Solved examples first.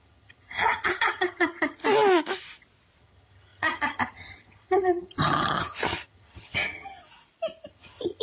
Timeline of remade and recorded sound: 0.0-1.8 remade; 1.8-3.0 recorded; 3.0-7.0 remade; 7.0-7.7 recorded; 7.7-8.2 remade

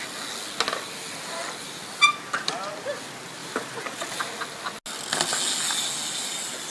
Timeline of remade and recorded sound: 0.0-3.4 recorded; 3.4-4.2 remade; 4.2-6.7 recorded

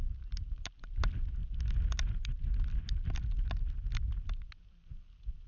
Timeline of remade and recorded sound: 0.0-5.5 recorded

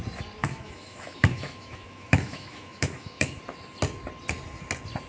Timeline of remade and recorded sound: 0.0-0.4 recorded; 0.4-3.4 remade; 3.4-5.1 recorded

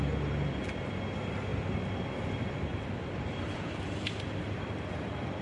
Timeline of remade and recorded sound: 0.0-2.7 recorded; 2.7-5.4 remade

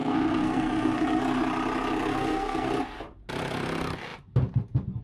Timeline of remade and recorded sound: 0.0-1.2 remade; 1.2-2.1 recorded; 2.1-2.7 remade; 2.7-5.0 recorded

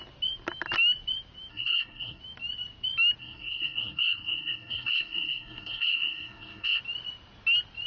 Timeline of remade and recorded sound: 0.0-1.5 recorded; 1.5-2.2 remade; 2.2-3.2 recorded; 3.2-6.8 remade; 6.8-7.9 recorded

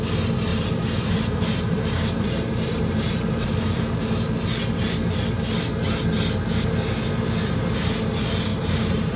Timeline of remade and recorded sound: 0.0-0.5 recorded; 0.5-3.1 remade; 3.1-8.5 recorded; 8.5-9.2 remade